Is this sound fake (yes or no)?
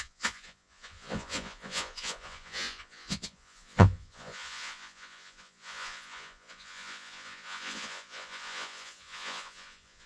yes